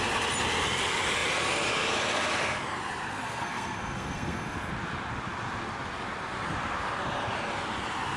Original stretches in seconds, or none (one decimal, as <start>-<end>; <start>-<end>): 0.0-3.1; 4.7-8.2